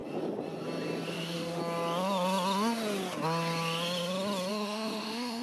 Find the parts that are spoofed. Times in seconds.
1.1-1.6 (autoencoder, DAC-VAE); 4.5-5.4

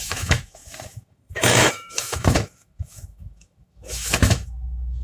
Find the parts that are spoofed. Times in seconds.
0.0-5.0 (autoencoder, DAC-VAE)

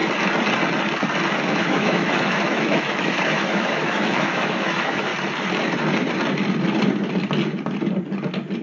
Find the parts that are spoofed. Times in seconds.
1.5-5.1 (autoencoder, DAC-VAE)

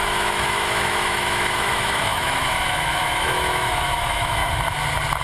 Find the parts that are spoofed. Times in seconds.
0.0-4.4 (autoencoder, DAC-VAE)

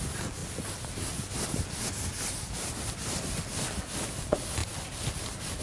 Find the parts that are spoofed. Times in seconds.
none

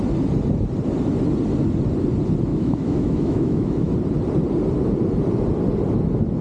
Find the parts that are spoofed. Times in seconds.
2.5-3.9 (autoencoder, DAC-VAE)

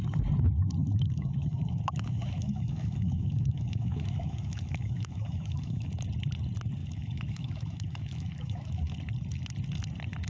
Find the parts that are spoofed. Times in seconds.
0.8-5.9 (autoencoder, DAC-VAE); 6.8-8.9